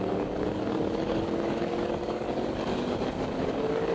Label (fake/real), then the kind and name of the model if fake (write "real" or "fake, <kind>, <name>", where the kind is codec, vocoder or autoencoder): fake, codec, DAC